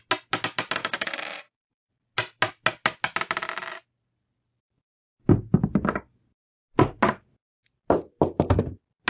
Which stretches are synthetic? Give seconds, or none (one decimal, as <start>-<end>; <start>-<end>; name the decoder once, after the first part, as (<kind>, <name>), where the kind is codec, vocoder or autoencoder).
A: 0.8-1.9 (codec, DAC)